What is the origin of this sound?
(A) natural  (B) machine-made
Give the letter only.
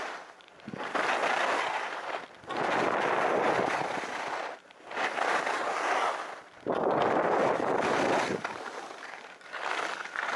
A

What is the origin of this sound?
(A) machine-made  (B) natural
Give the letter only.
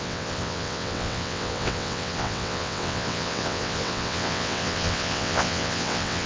A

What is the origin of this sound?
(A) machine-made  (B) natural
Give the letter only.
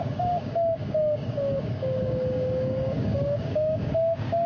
A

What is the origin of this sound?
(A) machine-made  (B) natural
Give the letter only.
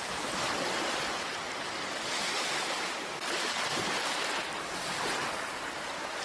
B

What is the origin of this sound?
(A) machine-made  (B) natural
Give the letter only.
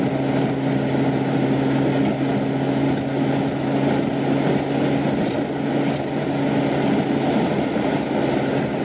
B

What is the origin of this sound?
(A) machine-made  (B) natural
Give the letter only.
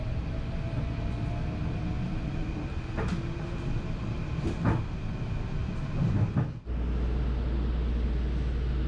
B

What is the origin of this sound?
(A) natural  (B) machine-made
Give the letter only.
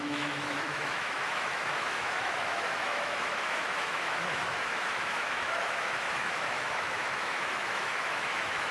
B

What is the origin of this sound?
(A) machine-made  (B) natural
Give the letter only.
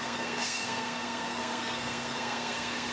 A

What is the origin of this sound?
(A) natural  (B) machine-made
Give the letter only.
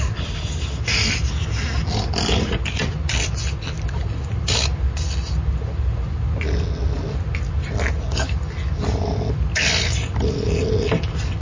A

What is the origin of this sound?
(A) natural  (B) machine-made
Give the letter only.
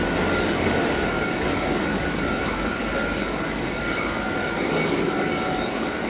B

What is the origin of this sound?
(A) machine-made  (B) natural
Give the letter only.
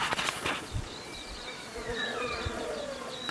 A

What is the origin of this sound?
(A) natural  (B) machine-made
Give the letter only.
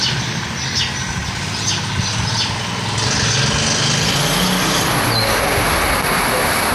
A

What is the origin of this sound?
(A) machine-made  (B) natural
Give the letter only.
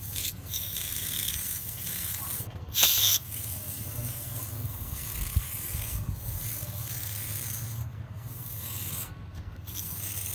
A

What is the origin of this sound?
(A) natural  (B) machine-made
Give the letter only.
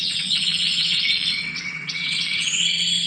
B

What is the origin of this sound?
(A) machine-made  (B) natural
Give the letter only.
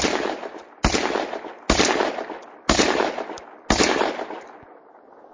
B